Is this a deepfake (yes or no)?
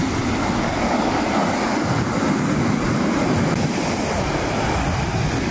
no